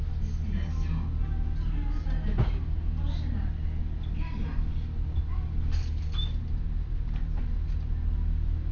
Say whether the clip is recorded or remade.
recorded